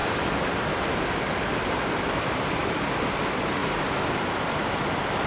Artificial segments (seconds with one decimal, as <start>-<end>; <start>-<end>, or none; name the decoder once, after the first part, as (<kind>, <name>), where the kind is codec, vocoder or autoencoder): 0.0-0.9 (vocoder, BigVGAN v2); 2.6-3.2; 3.6-4.7